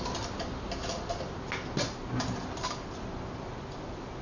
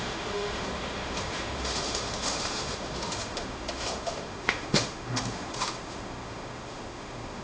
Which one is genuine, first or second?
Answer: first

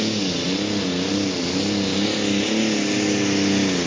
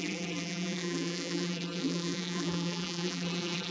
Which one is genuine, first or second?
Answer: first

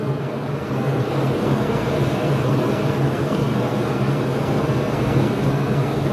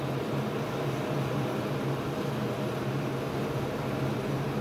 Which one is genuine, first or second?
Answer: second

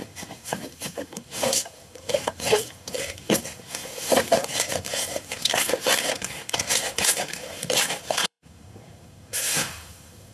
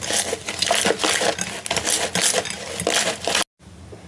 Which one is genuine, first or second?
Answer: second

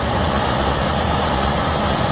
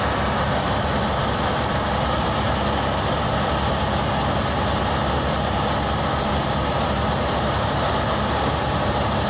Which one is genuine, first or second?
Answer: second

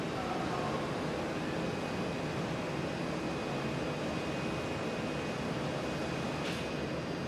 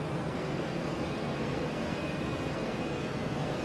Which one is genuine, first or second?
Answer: first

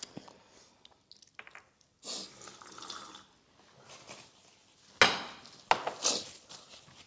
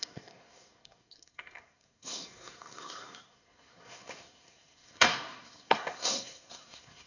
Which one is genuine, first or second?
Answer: first